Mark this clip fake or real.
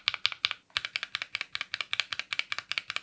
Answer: real